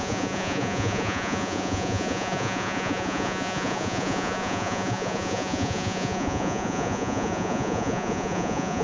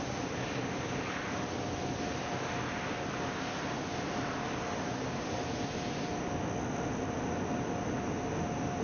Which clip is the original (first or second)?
second